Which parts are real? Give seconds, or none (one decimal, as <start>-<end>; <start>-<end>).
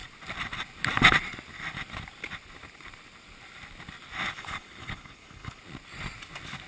0.0-4.4; 5.6-6.7